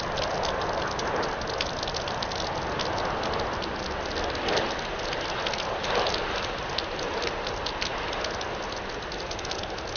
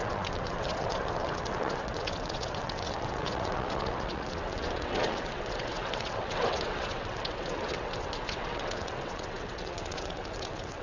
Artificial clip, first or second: second